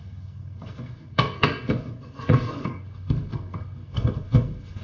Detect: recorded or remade remade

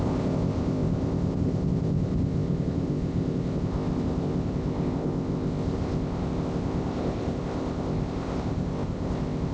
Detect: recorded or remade remade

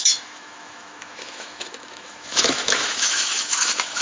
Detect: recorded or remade remade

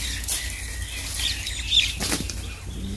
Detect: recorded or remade recorded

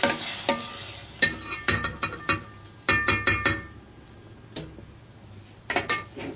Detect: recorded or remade recorded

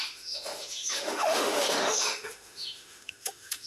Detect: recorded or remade remade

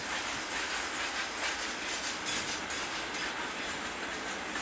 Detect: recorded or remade recorded